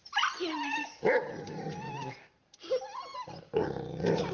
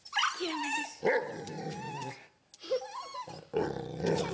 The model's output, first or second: first